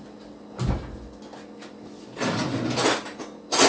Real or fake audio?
real